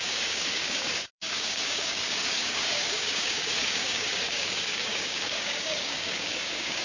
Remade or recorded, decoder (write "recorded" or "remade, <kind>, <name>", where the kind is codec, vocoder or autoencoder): remade, codec, DAC